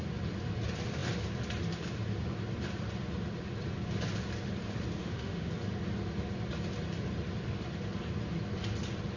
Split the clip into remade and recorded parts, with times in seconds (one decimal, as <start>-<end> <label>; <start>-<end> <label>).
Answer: 0.0-5.0 recorded; 5.0-5.5 remade; 5.5-9.2 recorded